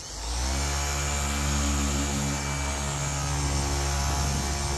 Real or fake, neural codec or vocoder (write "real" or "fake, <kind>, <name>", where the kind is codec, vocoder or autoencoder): real